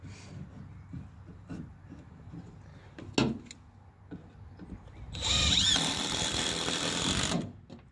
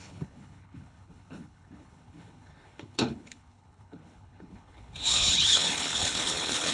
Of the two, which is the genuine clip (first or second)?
first